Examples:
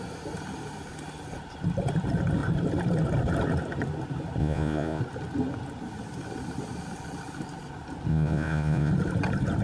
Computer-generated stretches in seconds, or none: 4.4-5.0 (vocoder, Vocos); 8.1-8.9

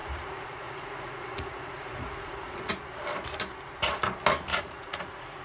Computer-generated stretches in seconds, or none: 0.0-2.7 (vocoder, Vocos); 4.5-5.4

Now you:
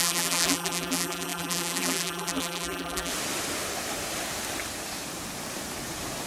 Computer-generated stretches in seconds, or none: 0.0-3.1 (vocoder, BigVGAN v2)

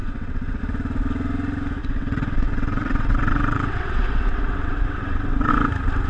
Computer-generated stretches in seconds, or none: 0.0-0.6 (vocoder, WaveNeXt); 1.8-5.5